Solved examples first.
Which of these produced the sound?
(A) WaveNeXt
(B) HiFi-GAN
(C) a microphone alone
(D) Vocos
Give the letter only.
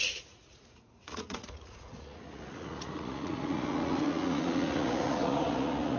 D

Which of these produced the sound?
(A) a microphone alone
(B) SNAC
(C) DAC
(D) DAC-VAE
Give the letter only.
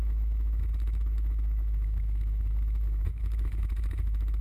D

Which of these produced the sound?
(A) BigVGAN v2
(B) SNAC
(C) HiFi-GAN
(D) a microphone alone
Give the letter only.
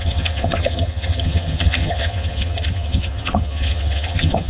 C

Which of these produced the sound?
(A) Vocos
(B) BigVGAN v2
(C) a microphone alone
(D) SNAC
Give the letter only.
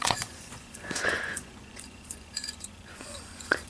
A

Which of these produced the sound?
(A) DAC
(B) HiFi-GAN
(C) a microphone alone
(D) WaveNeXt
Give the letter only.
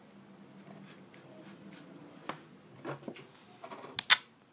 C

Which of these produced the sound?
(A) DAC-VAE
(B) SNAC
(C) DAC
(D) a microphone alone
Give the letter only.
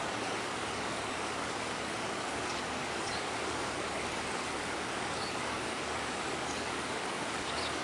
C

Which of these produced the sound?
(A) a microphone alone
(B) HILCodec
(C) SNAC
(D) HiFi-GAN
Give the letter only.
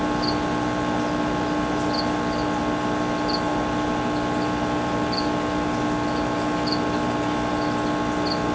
A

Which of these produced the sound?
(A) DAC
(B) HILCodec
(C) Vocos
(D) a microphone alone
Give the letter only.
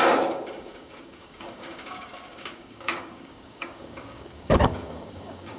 A